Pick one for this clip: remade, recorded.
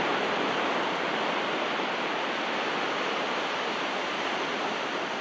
remade